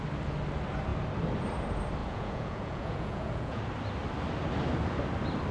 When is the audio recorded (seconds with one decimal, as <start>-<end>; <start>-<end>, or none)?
0.0-2.0; 3.6-5.5